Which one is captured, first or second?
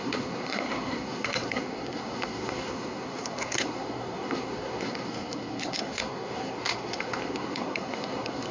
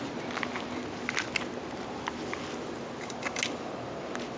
second